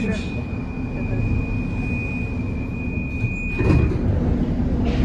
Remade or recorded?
recorded